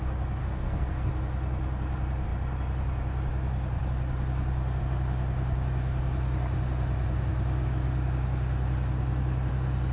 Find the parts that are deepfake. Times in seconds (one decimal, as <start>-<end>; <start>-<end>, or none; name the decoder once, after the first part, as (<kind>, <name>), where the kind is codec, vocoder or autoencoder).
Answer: 0.4-1.1 (codec, SNAC)